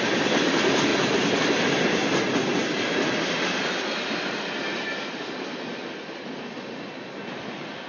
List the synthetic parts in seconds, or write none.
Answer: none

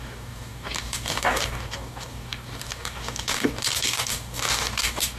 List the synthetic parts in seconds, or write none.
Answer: 0.0-5.2 (codec, DAC)

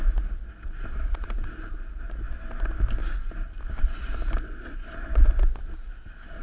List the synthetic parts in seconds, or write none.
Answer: none

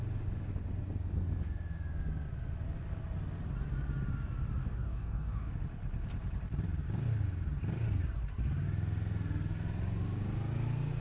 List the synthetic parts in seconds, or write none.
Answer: 4.6-5.5 (codec, DAC)

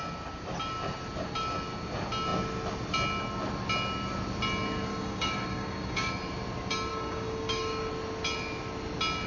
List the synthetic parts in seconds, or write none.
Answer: 4.9-6.1 (codec, DAC); 6.9-7.9

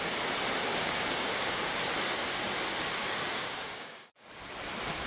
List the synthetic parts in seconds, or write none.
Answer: 0.7-1.8 (codec, DAC); 3.0-4.3

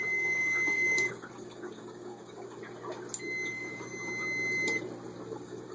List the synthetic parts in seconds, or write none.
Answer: 0.0-2.6 (codec, DAC); 3.5-3.9; 5.3-5.7

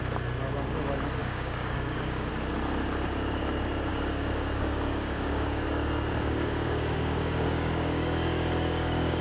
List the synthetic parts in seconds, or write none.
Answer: 1.2-2.3 (codec, DAC); 3.9-9.2